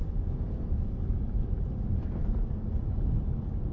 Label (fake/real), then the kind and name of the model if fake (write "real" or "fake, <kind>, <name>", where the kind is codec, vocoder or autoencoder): real